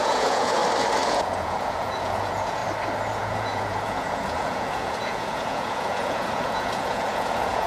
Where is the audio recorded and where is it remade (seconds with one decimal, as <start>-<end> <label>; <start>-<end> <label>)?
0.0-0.6 remade; 0.6-1.1 recorded; 1.1-2.6 remade; 2.6-3.1 recorded; 3.1-7.7 remade